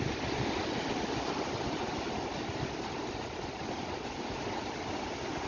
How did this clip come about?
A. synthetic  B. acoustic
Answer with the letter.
B